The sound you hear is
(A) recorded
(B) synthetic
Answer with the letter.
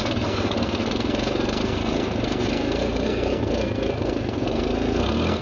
B